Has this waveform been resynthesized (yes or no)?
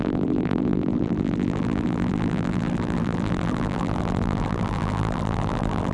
yes